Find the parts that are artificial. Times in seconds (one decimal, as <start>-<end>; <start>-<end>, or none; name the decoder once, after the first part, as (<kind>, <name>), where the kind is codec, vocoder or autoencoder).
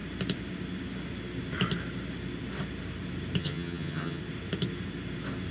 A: 3.4-4.2 (vocoder, HiFi-GAN)